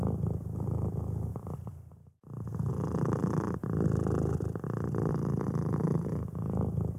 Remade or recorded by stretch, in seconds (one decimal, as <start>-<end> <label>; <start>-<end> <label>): 0.0-7.0 recorded